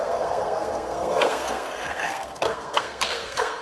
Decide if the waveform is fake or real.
fake